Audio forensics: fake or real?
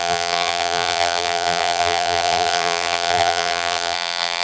fake